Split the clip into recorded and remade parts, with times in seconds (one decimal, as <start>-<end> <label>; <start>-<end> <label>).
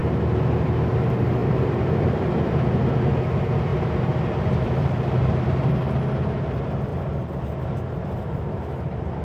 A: 0.0-1.4 recorded; 1.4-2.5 remade; 2.5-3.7 recorded; 3.7-5.7 remade; 5.7-6.9 recorded; 6.9-7.4 remade; 7.4-9.2 recorded